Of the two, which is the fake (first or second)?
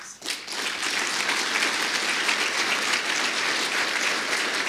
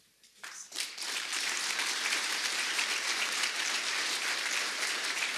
second